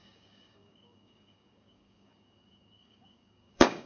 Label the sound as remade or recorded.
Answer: remade